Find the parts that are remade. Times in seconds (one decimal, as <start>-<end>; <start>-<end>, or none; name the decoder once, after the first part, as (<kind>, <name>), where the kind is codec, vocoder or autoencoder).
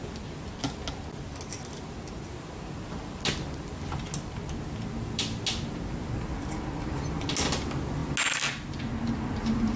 none